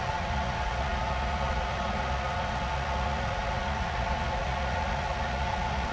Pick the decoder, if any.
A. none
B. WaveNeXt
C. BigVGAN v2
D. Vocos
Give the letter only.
D